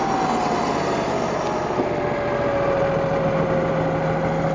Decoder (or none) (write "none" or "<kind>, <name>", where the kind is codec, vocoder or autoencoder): none